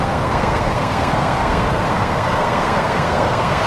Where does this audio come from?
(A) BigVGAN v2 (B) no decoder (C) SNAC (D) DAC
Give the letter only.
C